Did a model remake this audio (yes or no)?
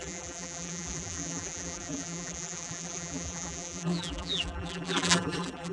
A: yes